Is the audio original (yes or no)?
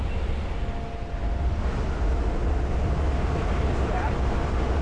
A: yes